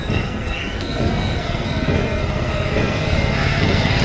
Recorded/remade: remade